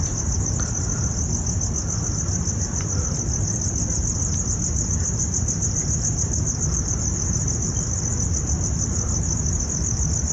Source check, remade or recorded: recorded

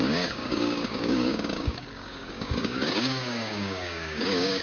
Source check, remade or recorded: remade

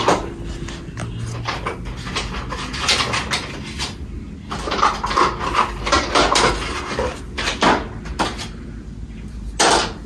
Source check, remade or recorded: recorded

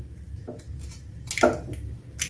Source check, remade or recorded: recorded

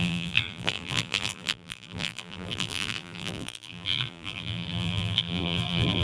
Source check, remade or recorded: remade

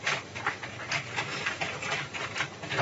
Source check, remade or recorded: recorded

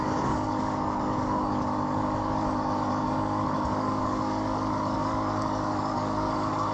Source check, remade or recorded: remade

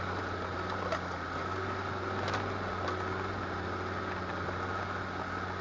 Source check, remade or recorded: recorded